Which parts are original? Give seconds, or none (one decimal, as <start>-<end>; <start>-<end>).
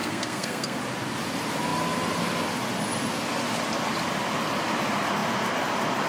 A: 0.8-6.1